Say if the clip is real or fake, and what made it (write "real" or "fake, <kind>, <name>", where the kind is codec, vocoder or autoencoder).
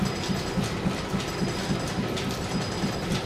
real